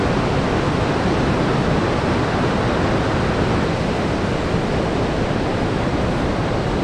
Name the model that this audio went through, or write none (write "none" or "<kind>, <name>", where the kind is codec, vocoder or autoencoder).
none